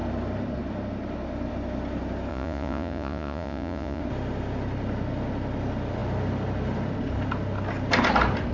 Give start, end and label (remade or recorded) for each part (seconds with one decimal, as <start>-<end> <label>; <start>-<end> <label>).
0.0-2.3 recorded; 2.3-4.0 remade; 4.0-8.5 recorded